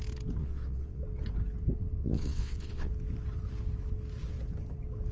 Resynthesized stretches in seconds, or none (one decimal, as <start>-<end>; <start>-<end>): 0.4-1.0; 2.0-2.9